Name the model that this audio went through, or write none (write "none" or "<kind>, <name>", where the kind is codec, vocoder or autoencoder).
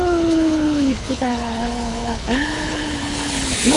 codec, HILCodec